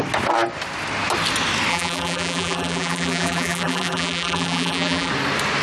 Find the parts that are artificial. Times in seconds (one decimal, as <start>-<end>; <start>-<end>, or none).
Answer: 1.7-5.1